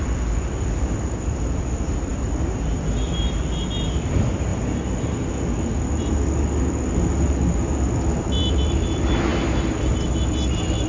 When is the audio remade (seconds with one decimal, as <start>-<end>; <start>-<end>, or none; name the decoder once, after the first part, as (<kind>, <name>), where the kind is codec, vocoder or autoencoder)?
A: 0.0-4.5 (vocoder, BigVGAN v2); 8.2-10.9

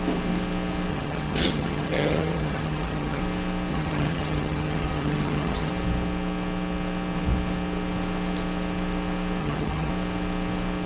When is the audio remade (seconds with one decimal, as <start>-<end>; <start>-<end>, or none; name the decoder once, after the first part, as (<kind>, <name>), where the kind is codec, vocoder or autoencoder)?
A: 0.9-3.2 (vocoder, HiFi-GAN); 3.7-5.7; 9.4-9.9

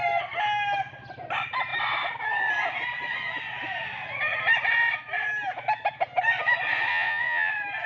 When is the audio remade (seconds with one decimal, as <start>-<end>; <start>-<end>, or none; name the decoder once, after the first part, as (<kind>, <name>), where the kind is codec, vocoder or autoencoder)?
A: 6.9-7.5 (vocoder, Vocos)

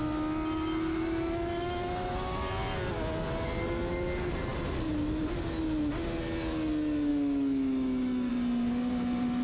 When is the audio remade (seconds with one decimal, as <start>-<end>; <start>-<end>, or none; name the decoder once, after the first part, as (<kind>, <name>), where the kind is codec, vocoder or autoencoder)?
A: 0.9-2.4 (autoencoder, DAC-VAE); 7.1-8.3

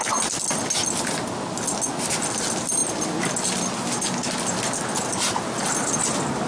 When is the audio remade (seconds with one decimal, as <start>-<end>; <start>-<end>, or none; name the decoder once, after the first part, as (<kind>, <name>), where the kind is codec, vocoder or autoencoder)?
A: none

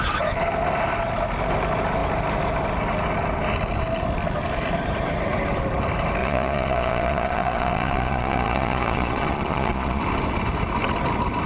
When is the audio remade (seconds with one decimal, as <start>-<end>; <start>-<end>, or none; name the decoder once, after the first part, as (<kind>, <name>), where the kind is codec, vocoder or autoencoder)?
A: 6.2-10.0 (vocoder, Vocos)

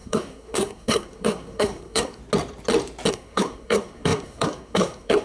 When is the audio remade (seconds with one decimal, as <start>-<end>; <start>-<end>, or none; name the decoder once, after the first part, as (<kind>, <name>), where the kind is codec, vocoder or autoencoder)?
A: 0.0-2.2 (codec, SNAC); 3.1-5.2